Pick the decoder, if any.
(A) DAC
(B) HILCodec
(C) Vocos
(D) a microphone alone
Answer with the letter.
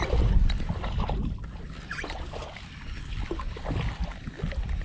D